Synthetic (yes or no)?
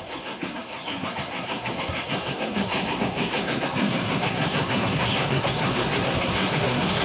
yes